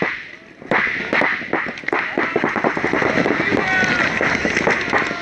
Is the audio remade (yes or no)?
no